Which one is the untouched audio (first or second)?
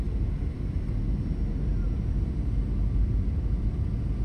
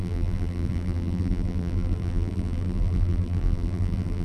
first